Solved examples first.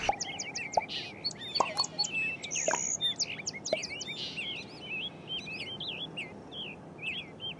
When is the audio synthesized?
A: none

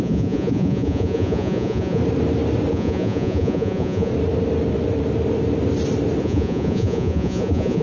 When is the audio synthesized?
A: 0.0-2.0; 2.7-4.1; 6.2-7.8

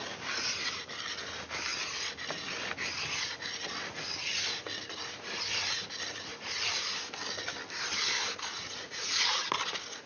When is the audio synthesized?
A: 8.5-9.5

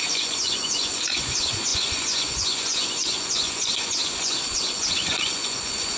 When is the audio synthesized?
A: 0.0-6.0

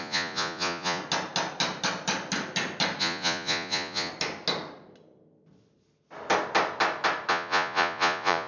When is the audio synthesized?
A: 0.0-1.0; 3.0-4.1; 7.3-8.5